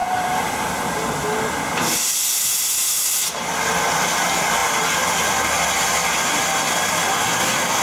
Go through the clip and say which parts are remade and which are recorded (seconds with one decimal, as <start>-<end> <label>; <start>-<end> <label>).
0.0-0.8 remade; 0.8-7.8 recorded